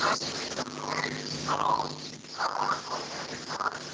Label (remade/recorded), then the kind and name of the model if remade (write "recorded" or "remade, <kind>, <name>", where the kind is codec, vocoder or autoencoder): recorded